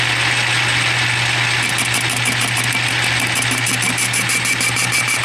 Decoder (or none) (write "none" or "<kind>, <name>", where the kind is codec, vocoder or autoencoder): none